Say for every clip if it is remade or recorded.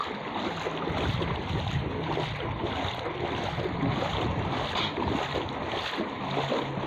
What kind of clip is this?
recorded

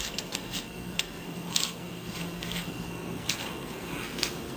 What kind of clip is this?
remade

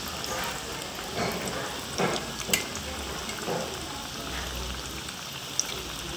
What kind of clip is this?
recorded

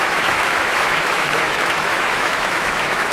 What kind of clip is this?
remade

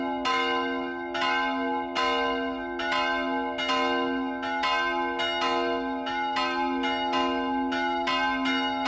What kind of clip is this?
recorded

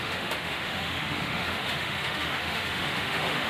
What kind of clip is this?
remade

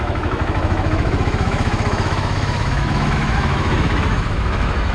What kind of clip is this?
remade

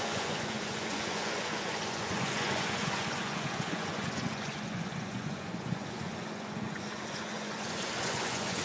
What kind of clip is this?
remade